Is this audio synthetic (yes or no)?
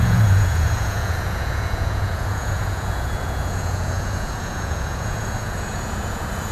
yes